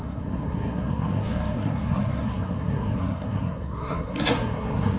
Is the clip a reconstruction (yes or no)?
yes